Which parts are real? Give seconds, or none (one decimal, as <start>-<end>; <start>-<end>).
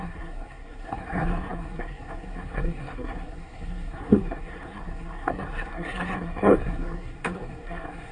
none